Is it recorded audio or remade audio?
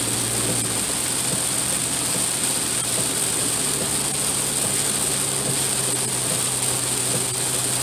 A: recorded